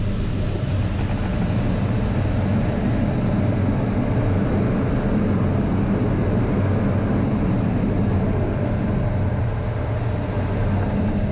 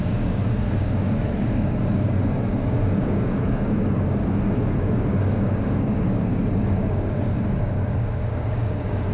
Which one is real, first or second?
first